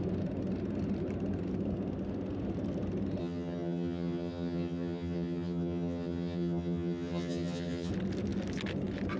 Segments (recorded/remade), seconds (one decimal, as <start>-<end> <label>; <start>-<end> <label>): 0.0-3.2 recorded; 3.2-7.9 remade; 7.9-9.2 recorded